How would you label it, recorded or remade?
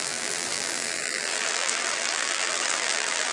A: remade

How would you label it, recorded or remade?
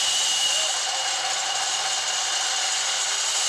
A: recorded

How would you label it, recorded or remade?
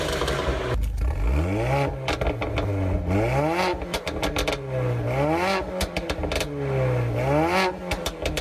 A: recorded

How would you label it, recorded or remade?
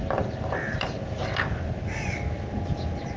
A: recorded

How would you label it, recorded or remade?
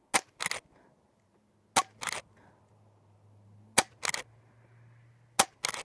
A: recorded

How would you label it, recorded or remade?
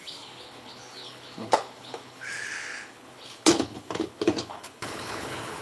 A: remade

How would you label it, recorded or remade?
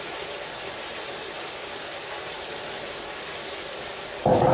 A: recorded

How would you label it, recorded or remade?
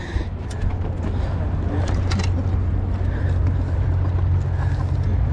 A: recorded